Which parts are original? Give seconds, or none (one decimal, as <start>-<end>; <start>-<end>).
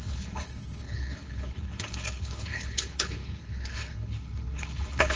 none